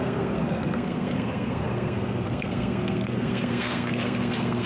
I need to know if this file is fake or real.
fake